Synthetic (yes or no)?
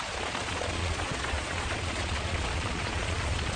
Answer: yes